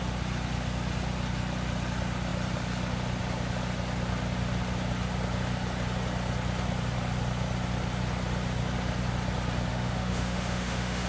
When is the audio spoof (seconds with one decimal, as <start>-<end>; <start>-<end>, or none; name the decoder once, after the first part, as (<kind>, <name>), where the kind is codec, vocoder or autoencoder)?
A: 9.7-11.1 (autoencoder, DAC-VAE)